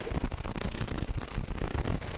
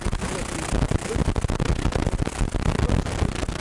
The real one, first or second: second